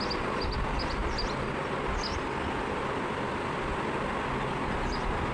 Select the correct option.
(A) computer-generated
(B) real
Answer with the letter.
B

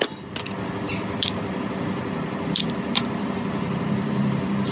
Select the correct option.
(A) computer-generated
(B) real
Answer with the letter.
A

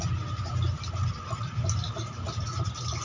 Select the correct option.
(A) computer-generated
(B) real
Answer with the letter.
B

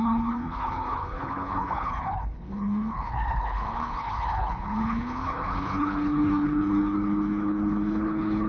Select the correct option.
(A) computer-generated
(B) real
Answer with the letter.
A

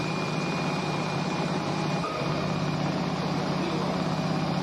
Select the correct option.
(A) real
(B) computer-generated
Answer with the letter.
B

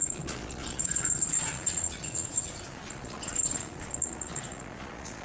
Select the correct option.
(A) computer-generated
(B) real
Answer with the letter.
A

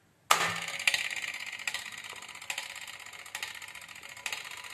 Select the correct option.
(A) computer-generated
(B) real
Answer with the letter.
B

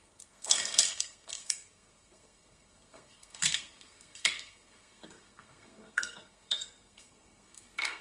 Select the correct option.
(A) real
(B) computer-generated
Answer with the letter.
B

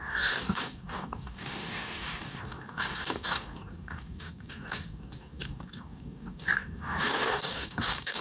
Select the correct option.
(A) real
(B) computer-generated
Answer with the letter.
B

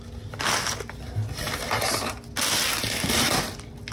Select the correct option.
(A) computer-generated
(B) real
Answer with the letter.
B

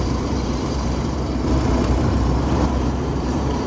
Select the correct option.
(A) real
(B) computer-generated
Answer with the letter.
B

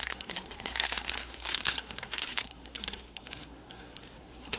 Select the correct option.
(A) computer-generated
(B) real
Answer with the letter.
A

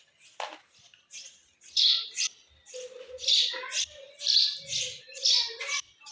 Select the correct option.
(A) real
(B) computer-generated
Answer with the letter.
A